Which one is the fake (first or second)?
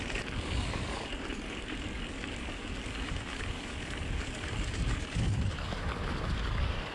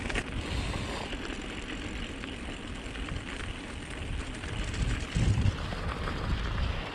first